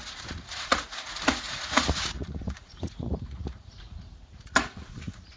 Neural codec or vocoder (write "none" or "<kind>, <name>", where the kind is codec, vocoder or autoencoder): vocoder, Vocos